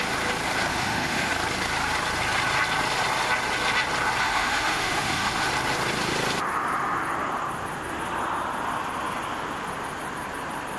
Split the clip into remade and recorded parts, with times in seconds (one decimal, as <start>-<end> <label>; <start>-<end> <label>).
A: 0.0-0.7 recorded; 0.7-1.3 remade; 1.3-4.2 recorded; 4.2-5.5 remade; 5.5-10.8 recorded